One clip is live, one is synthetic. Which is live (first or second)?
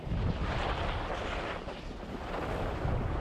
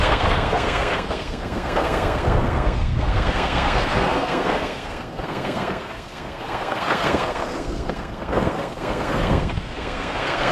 first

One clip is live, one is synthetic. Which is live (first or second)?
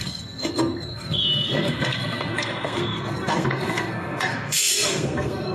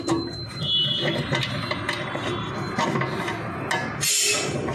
second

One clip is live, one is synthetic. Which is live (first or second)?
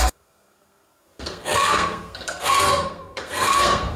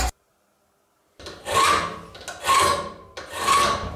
second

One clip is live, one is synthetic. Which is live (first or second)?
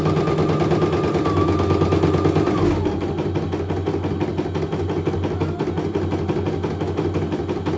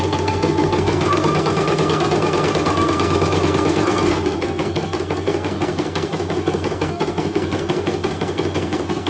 first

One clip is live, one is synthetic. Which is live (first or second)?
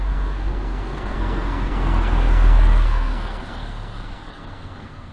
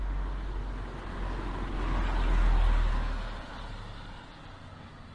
second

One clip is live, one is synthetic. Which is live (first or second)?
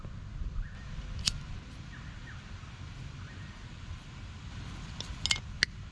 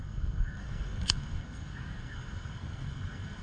first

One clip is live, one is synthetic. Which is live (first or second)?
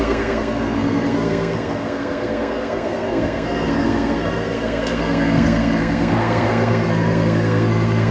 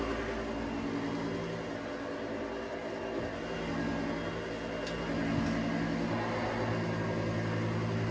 second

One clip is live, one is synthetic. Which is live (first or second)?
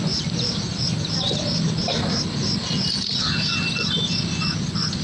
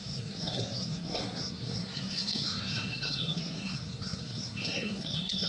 first